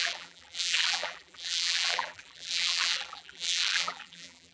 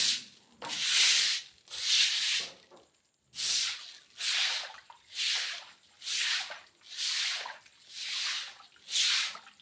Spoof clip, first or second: first